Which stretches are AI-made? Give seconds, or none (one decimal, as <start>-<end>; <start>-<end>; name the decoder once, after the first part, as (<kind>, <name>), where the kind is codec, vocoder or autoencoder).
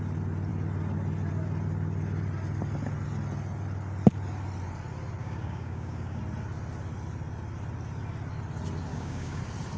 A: 5.2-6.2 (codec, DAC); 8.9-9.4